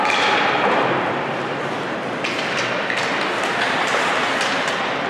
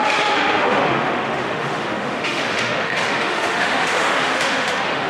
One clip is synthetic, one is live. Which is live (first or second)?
first